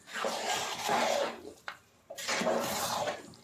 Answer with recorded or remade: remade